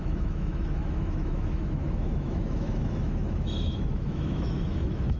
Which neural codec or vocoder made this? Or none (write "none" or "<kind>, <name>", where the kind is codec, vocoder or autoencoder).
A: autoencoder, DAC-VAE